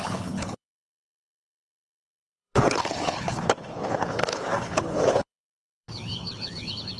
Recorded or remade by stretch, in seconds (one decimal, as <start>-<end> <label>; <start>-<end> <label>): 0.0-7.0 remade